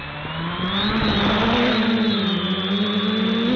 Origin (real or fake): real